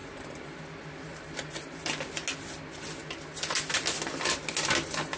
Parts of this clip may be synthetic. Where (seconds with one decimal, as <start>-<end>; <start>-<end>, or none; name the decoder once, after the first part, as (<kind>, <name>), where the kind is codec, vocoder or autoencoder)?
0.0-0.6 (vocoder, BigVGAN v2); 1.1-2.1